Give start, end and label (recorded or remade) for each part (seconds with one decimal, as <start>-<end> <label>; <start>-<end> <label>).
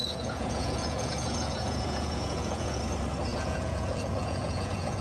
0.0-2.8 remade; 2.8-3.3 recorded; 3.3-5.0 remade